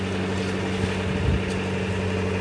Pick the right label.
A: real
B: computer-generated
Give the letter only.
A